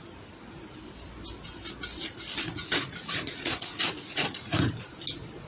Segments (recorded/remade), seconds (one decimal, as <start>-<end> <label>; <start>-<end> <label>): 0.0-2.6 recorded; 2.6-4.7 remade; 4.7-5.5 recorded